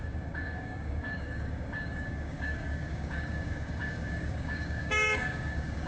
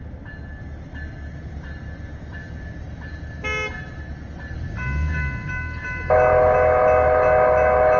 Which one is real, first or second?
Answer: second